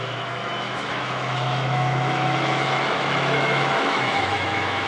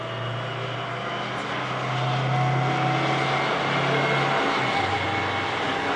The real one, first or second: second